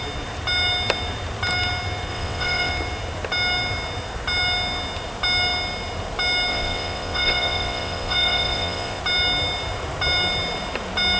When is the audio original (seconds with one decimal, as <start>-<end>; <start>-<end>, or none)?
0.0-2.1; 2.7-6.5; 9.0-11.2

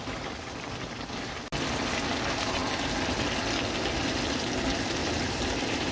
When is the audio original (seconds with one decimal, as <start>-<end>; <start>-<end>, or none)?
0.0-5.0

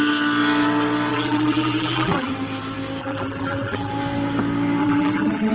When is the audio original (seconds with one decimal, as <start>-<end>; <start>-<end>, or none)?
0.0-1.1; 2.3-3.0; 3.9-4.8